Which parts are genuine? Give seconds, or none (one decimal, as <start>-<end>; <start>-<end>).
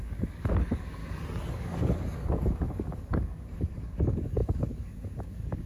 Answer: 1.0-1.5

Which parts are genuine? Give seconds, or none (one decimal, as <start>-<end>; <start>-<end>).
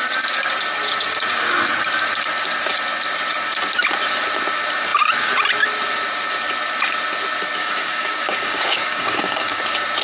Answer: 0.0-7.6; 9.6-10.0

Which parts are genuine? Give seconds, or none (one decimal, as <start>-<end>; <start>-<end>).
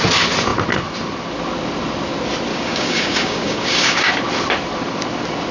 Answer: 0.0-2.5; 4.1-5.5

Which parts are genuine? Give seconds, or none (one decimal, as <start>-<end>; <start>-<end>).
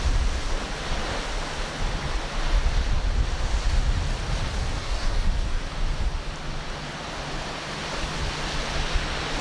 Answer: 0.0-4.8; 5.6-9.4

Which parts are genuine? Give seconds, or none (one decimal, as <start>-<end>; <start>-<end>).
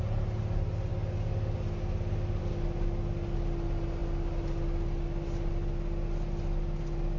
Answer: 0.0-7.2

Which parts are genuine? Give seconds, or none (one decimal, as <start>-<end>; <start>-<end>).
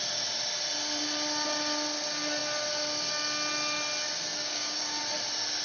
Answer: 0.0-4.3; 5.0-5.6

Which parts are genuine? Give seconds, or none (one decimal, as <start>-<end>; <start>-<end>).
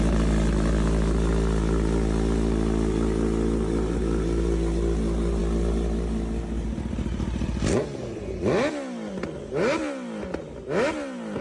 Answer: 0.0-11.4